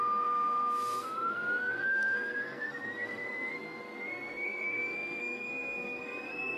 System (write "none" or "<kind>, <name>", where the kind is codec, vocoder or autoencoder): codec, SNAC